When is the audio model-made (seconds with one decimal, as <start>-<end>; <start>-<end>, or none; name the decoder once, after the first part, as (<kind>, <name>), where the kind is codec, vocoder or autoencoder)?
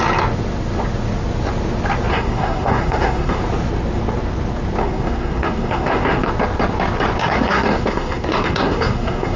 2.1-3.4 (codec, SNAC); 4.8-6.3; 7.2-9.4